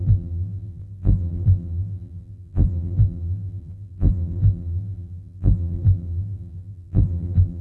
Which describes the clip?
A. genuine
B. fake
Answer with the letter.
B